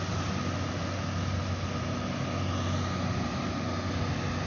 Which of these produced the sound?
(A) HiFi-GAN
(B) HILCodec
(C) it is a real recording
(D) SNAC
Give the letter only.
C